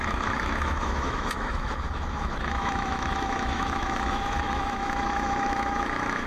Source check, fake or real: fake